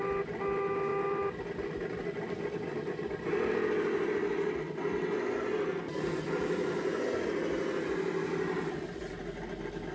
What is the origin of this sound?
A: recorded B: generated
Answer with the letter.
A